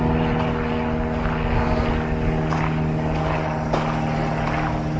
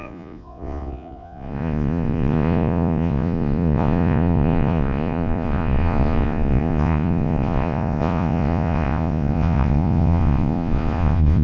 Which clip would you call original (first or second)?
first